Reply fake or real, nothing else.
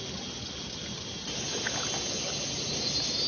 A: real